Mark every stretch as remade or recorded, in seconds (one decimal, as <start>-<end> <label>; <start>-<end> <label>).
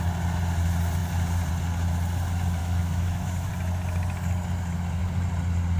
0.0-2.6 recorded; 2.6-3.5 remade; 3.5-5.8 recorded